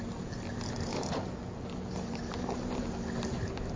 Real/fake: real